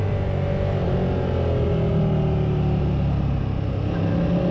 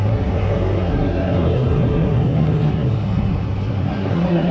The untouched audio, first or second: first